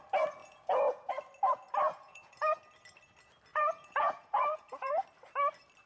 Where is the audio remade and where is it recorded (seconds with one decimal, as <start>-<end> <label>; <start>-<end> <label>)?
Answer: 0.0-0.4 recorded; 0.4-1.1 remade; 1.1-1.9 recorded; 1.9-2.5 remade; 2.5-3.5 recorded; 3.5-4.9 remade; 4.9-5.9 recorded